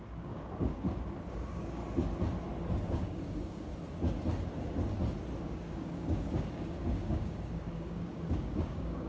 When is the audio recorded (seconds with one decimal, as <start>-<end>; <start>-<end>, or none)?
1.8-2.7; 3.7-5.4